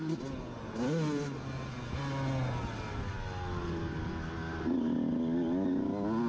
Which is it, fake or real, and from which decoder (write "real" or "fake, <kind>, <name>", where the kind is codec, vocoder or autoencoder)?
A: real